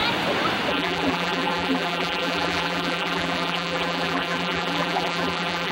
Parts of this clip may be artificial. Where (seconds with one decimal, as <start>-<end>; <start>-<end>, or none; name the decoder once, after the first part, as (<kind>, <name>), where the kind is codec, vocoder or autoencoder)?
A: 0.7-5.7 (vocoder, BigVGAN v2)